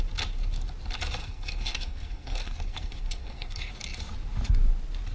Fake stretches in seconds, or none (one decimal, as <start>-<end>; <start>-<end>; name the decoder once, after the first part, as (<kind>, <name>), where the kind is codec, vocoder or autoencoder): 1.2-3.7 (codec, SNAC)